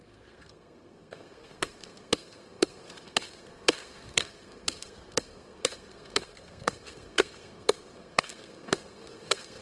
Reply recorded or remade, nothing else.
remade